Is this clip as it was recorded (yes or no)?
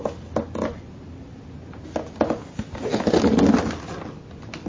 yes